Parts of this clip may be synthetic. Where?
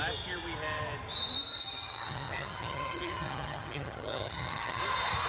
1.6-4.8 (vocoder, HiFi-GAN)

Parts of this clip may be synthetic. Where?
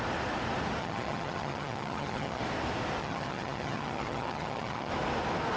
0.8-2.4 (vocoder, HiFi-GAN); 3.0-4.9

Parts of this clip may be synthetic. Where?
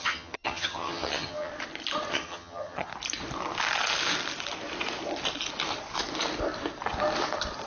0.0-1.5 (vocoder, HiFi-GAN); 2.1-2.9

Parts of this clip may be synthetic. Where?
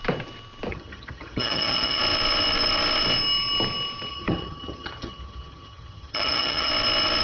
0.7-2.0 (vocoder, HiFi-GAN); 4.1-6.7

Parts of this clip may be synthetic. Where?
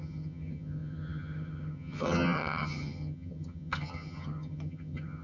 0.0-5.2 (vocoder, HiFi-GAN)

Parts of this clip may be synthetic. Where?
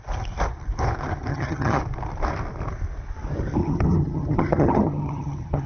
1.3-1.8 (vocoder, HiFi-GAN); 3.6-5.7